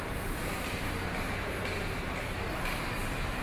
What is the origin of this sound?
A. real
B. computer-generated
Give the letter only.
A